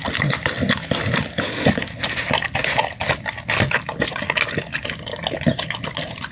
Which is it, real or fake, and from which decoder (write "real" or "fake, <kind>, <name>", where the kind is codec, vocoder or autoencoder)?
real